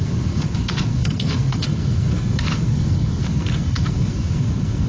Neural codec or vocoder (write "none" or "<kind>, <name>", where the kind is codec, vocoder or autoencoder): codec, SNAC